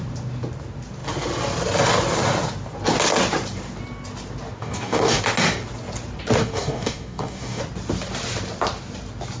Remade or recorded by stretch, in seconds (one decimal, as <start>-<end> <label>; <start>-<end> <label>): 0.0-4.6 recorded; 4.6-5.2 remade; 5.2-6.4 recorded; 6.4-7.6 remade; 7.6-9.4 recorded

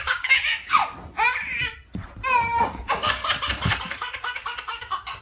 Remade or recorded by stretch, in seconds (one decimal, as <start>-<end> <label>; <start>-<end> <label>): 0.0-0.8 remade; 0.8-2.6 recorded; 2.6-3.2 remade; 3.2-3.8 recorded; 3.8-5.2 remade

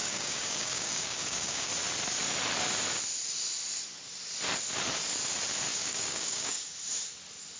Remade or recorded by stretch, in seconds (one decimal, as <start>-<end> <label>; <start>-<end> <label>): 0.0-1.7 remade; 1.7-5.7 recorded; 5.7-6.7 remade; 6.7-7.6 recorded

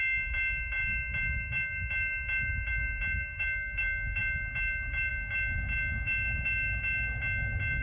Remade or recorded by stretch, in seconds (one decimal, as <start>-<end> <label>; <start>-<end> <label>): 0.0-7.8 recorded

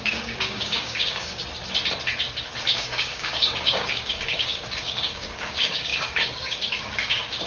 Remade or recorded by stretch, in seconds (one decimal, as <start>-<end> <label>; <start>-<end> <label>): 0.0-1.4 remade; 1.4-2.7 recorded; 2.7-7.5 remade